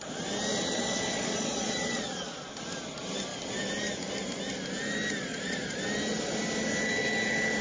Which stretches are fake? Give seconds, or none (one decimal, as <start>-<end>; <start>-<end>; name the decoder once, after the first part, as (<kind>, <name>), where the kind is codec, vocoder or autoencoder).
0.5-2.4 (vocoder, Vocos); 5.3-5.8